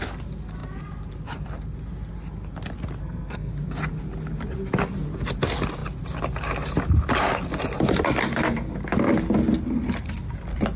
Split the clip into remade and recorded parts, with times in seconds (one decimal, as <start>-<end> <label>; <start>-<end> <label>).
0.0-3.0 recorded; 3.0-3.5 remade; 3.5-10.8 recorded